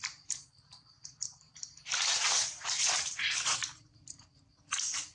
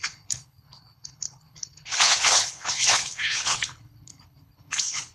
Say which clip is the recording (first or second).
first